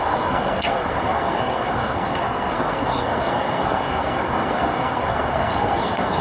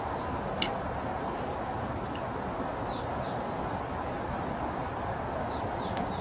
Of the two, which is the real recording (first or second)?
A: second